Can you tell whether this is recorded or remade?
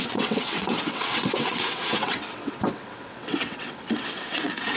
remade